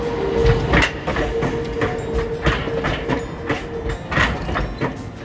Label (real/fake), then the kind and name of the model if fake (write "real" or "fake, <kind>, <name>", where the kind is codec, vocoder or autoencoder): real